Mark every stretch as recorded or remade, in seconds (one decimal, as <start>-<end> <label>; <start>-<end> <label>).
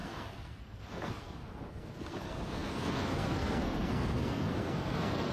0.0-5.3 remade